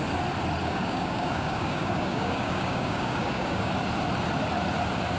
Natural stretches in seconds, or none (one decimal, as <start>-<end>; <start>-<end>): 0.0-0.6; 3.7-5.2